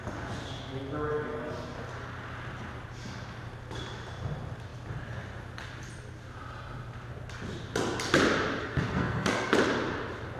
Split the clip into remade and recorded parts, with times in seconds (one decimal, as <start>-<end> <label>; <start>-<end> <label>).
0.0-8.6 recorded; 8.6-9.5 remade; 9.5-10.4 recorded